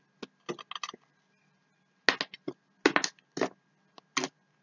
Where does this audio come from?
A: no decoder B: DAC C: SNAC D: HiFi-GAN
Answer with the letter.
A